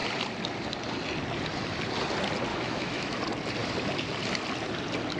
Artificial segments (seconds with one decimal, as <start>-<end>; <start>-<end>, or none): 2.5-3.2